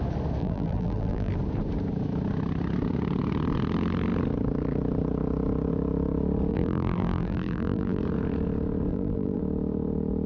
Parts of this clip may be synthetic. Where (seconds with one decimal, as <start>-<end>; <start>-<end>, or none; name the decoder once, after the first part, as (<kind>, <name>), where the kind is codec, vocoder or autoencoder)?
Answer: 0.4-1.3 (vocoder, BigVGAN v2); 6.5-8.0; 8.9-9.4